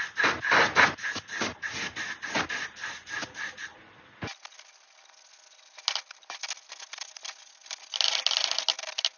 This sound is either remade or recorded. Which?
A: recorded